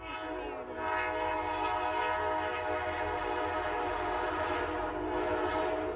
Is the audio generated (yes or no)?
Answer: no